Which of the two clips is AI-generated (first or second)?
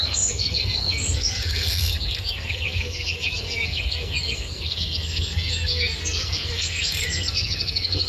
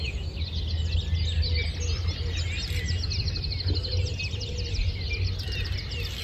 first